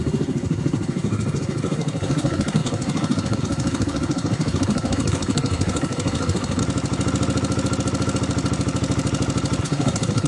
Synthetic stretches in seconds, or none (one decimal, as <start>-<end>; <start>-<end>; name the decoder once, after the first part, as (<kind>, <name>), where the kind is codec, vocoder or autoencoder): 0.0-6.6 (codec, SNAC); 9.6-10.3